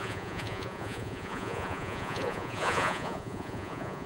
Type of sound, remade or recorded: remade